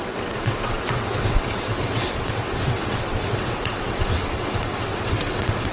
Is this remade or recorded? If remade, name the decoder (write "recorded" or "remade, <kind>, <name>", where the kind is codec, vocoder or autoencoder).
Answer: remade, vocoder, WaveNeXt